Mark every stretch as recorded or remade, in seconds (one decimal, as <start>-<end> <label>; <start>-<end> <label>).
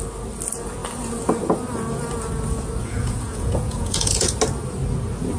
0.0-2.8 recorded; 2.8-4.3 remade; 4.3-5.4 recorded